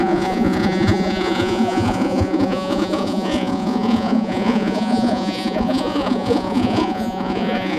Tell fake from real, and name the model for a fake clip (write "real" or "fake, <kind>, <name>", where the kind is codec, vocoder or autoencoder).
fake, vocoder, Vocos